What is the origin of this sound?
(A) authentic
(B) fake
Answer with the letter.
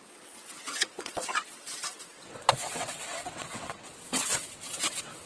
B